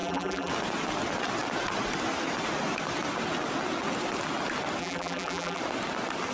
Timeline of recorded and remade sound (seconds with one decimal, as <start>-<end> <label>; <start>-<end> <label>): 0.0-0.5 remade; 0.5-4.8 recorded; 4.8-5.6 remade; 5.6-6.3 recorded